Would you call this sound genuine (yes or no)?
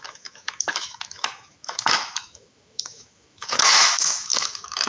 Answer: no